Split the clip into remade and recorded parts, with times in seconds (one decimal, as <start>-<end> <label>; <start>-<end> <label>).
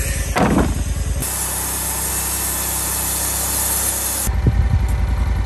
0.0-5.5 recorded